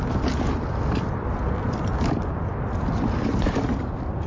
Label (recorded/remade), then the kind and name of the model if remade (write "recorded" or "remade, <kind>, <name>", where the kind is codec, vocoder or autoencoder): recorded